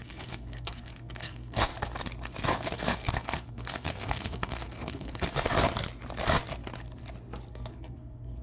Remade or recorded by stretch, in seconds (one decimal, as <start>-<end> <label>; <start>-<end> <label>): 0.0-1.7 remade; 1.7-2.4 recorded; 2.4-5.5 remade; 5.5-7.5 recorded; 7.5-8.4 remade